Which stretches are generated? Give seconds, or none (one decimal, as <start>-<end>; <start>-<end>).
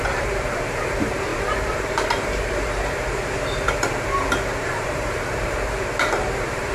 0.0-6.7